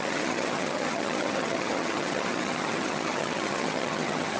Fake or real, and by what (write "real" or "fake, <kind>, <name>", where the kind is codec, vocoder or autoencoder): fake, vocoder, HiFi-GAN